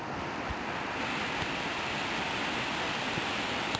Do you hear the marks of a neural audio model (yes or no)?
no